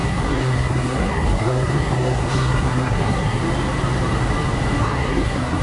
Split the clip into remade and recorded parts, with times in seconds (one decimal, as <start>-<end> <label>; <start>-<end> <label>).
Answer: 0.0-3.4 remade; 3.4-4.8 recorded; 4.8-5.6 remade